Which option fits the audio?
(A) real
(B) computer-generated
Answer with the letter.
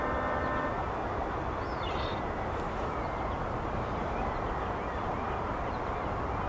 A